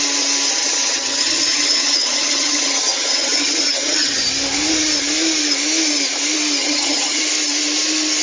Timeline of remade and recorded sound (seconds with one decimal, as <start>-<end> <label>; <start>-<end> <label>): 0.0-0.5 recorded; 0.5-4.2 remade; 4.2-6.6 recorded; 6.6-7.2 remade; 7.2-8.2 recorded